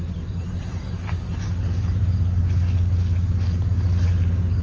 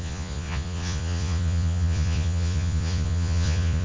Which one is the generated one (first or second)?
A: second